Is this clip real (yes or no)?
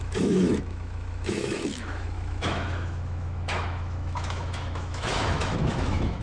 no